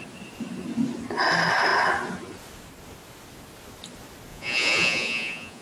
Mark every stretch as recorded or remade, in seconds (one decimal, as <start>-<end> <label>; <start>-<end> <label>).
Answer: 0.0-4.3 recorded; 4.3-5.6 remade